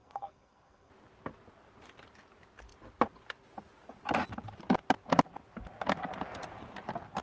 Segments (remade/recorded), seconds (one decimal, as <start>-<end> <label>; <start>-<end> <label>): 0.0-0.9 remade; 0.9-7.2 recorded